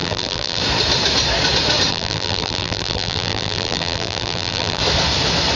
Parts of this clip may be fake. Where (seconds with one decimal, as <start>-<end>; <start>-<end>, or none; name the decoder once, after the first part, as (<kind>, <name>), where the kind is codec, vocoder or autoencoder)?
0.0-0.6 (vocoder, BigVGAN v2); 1.9-4.8